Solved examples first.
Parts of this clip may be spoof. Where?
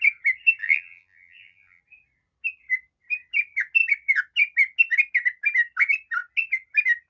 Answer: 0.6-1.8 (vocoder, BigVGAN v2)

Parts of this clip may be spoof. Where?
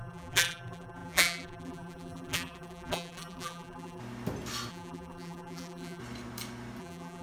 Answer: 0.0-4.0 (vocoder, BigVGAN v2); 4.7-6.0; 6.8-7.2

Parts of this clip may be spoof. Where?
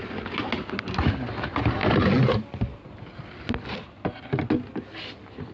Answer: none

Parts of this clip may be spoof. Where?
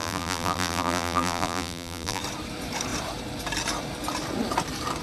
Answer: 0.0-2.2 (vocoder, BigVGAN v2)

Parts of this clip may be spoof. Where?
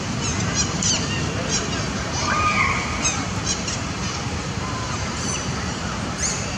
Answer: 1.7-5.7 (vocoder, BigVGAN v2)